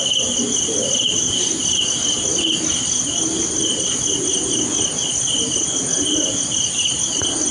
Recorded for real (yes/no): yes